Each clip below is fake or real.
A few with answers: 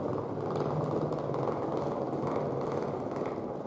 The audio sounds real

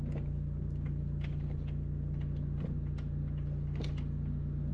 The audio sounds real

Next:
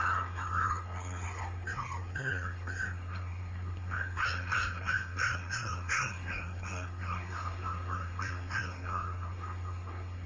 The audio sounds fake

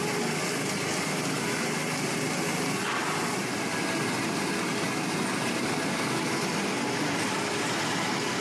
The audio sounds real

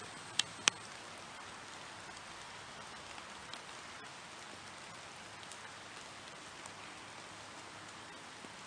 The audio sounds real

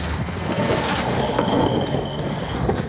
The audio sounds fake